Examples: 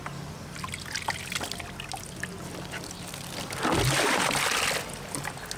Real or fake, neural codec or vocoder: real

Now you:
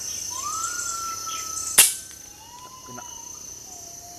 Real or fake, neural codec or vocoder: real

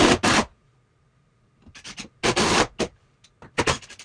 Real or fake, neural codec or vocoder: real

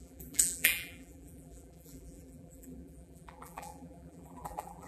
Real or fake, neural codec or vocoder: fake, vocoder, BigVGAN v2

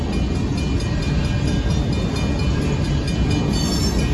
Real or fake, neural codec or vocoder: real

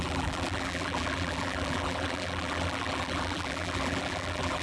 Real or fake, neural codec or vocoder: fake, vocoder, BigVGAN v2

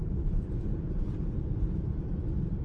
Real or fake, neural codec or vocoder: fake, vocoder, BigVGAN v2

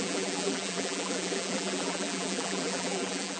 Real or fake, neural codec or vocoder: fake, vocoder, BigVGAN v2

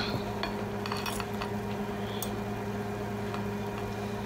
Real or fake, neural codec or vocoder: real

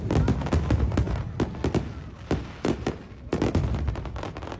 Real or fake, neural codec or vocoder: real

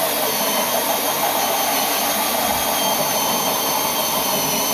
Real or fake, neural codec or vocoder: real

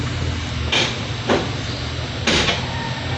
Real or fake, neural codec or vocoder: real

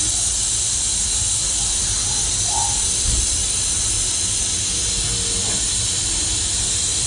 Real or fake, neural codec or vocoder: fake, vocoder, BigVGAN v2